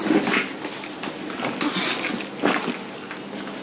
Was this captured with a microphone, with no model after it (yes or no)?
yes